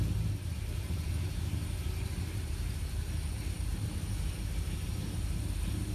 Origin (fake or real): fake